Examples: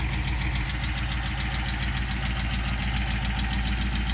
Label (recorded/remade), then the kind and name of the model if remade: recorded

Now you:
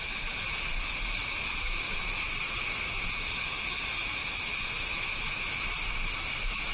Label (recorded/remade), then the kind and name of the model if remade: remade, autoencoder, DAC-VAE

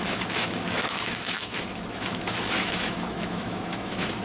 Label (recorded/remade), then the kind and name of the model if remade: remade, autoencoder, DAC-VAE